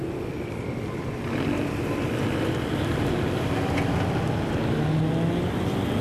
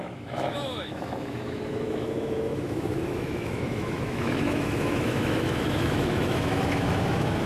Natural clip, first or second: first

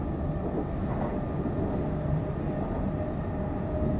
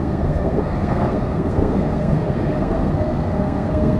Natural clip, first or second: first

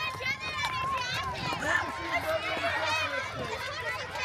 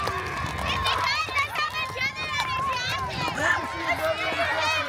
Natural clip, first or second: second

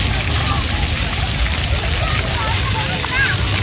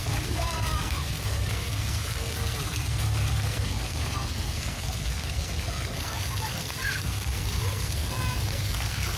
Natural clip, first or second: first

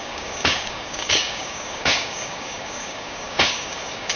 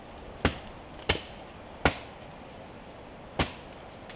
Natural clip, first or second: second